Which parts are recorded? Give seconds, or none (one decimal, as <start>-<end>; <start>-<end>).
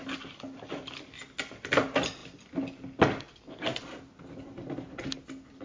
0.0-5.6